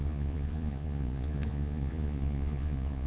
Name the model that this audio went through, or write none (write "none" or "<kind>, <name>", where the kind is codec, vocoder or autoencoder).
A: vocoder, Vocos